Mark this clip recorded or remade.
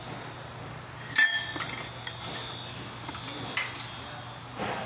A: recorded